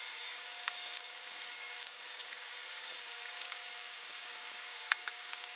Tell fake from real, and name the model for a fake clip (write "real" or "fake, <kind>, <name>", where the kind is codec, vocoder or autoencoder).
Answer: fake, codec, DAC